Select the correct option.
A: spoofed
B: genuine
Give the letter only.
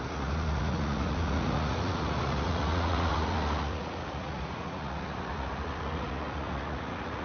A